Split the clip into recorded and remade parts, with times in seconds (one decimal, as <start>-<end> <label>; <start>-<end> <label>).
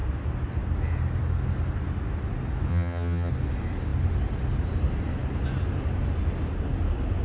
0.0-2.7 recorded; 2.7-3.3 remade; 3.3-7.2 recorded